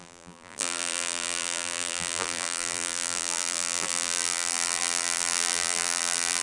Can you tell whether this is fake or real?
fake